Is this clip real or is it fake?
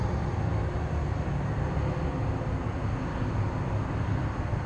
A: real